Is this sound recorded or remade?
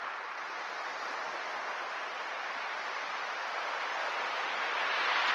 recorded